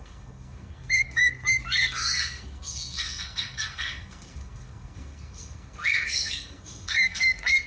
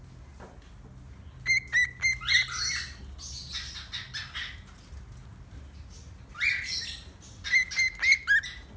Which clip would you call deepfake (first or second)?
first